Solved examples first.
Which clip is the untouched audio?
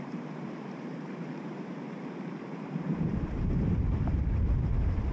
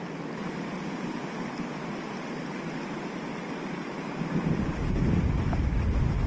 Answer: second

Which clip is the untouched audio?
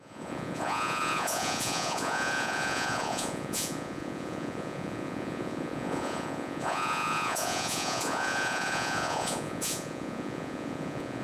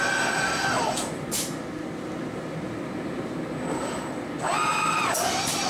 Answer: second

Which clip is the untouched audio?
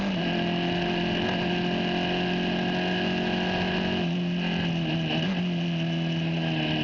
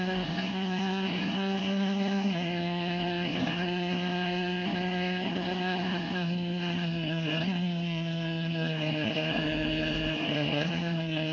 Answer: first